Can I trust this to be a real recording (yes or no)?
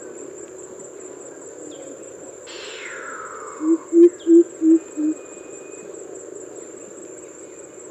yes